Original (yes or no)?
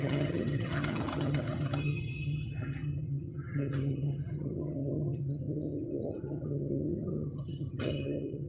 no